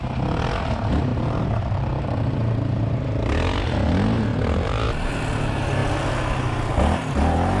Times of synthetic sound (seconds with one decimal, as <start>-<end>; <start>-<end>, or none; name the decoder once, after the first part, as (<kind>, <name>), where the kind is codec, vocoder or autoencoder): 1.1-3.0 (vocoder, BigVGAN v2); 4.3-5.1